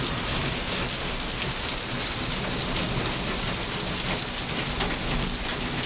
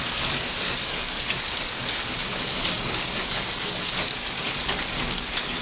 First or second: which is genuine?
first